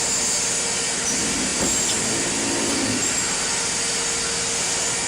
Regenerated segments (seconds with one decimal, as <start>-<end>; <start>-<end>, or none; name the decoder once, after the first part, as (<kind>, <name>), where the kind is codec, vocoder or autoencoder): none